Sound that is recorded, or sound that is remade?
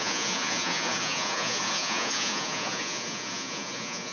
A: remade